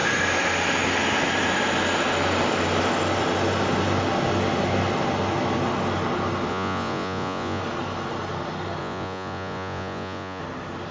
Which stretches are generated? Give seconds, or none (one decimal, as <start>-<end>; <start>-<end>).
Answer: 6.5-7.6; 8.8-10.4